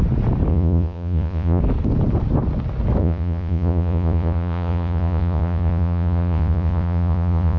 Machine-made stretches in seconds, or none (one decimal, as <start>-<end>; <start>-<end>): 0.5-1.6; 3.0-7.6